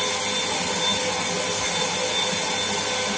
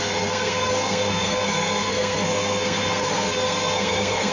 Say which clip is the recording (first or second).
first